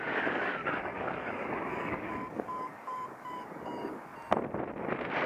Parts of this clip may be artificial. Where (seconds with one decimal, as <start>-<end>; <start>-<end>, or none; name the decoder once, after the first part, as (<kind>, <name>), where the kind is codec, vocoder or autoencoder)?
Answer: 0.0-4.1 (codec, DAC)